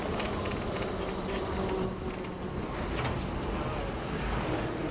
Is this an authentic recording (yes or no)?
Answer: yes